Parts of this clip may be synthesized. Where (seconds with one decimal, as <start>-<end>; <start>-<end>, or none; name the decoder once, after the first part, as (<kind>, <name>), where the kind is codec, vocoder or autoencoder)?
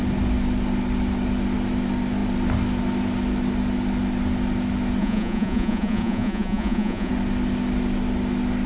5.0-7.1 (vocoder, Vocos)